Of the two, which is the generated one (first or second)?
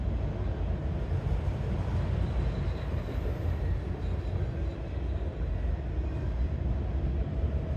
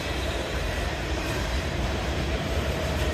second